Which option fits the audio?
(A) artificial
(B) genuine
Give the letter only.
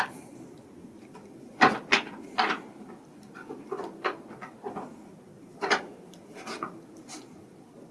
B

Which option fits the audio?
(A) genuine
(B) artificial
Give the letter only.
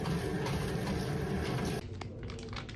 A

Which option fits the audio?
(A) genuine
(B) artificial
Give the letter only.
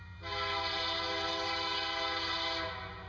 A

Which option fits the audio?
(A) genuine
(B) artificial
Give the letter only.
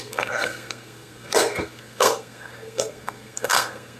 B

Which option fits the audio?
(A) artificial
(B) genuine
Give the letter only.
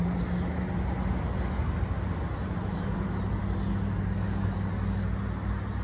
B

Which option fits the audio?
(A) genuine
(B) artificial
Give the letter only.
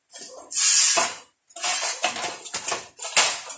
A